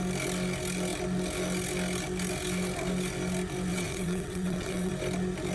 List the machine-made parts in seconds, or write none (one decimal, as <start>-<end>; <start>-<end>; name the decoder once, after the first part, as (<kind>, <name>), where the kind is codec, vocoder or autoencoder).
3.7-4.9 (vocoder, WaveNeXt)